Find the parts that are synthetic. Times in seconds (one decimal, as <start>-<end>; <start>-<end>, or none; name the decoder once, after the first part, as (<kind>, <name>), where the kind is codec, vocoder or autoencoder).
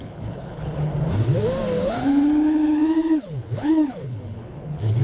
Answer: 0.0-0.9 (codec, HILCodec); 1.8-5.0